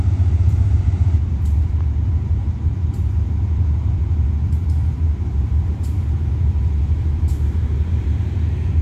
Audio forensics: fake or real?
fake